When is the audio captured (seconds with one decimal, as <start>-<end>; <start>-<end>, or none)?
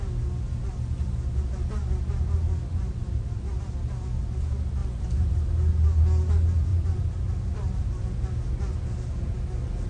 0.0-3.0; 3.6-4.8; 5.7-6.7; 7.5-9.9